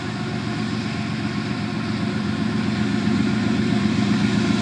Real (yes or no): yes